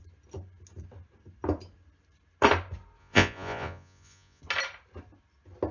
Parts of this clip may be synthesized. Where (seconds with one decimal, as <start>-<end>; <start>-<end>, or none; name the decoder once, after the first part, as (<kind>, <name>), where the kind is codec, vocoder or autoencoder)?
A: 3.0-4.4 (vocoder, Vocos)